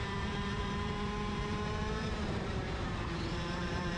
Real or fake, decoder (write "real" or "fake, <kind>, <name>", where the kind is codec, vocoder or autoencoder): fake, vocoder, BigVGAN v2